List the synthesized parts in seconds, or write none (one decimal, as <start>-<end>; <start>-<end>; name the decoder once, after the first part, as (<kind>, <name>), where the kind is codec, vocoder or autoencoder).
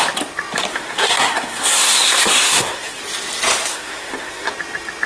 0.7-3.0 (codec, SNAC); 3.7-4.5